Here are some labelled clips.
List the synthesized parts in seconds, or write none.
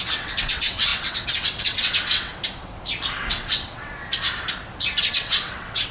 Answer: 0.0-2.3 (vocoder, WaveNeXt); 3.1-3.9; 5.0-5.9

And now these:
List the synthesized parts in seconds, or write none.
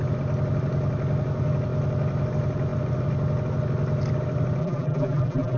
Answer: 4.6-5.6 (vocoder, BigVGAN v2)